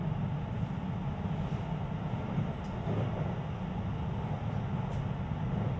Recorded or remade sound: recorded